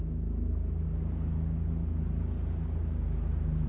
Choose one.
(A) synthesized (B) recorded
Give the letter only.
B